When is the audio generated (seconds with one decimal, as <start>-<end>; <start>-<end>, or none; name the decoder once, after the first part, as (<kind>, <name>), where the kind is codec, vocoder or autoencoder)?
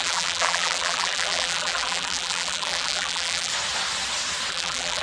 0.0-3.5 (vocoder, BigVGAN v2); 4.5-5.0